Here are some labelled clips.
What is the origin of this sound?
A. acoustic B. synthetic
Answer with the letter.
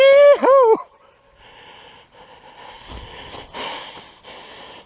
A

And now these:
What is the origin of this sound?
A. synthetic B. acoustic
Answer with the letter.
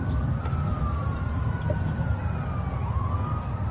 B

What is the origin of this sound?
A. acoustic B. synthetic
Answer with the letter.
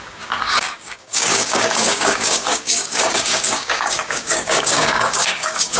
B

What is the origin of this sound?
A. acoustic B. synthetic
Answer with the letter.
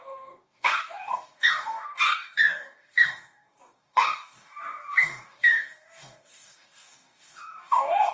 B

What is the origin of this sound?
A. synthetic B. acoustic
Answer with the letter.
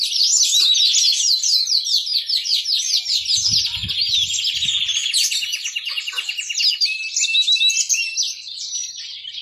B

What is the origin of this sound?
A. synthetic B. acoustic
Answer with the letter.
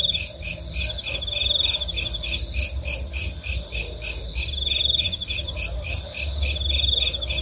B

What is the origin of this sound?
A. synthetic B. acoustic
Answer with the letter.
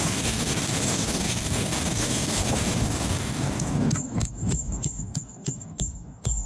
A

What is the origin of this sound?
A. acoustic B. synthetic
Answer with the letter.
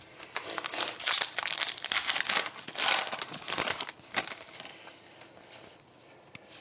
A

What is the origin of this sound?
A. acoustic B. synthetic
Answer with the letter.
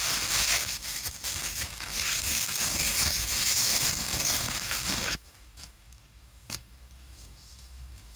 B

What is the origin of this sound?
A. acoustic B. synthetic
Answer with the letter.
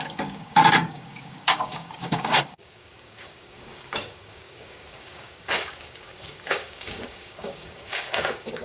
B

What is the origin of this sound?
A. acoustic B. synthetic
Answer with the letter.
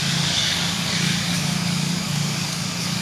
B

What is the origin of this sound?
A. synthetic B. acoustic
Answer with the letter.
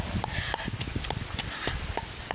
B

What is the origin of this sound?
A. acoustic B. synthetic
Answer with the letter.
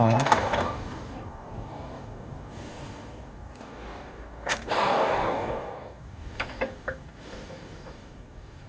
B